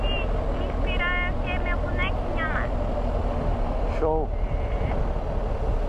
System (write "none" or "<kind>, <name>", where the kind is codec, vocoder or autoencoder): none